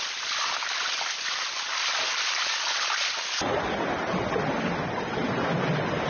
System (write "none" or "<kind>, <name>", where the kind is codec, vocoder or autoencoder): none